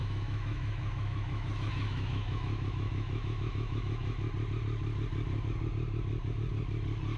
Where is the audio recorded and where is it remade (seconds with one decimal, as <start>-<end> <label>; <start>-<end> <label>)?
0.0-4.3 remade; 4.3-7.2 recorded